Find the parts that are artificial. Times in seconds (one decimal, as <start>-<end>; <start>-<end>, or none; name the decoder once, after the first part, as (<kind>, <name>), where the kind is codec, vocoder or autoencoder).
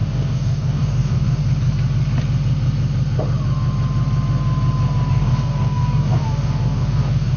0.0-1.4 (codec, DAC); 5.1-7.4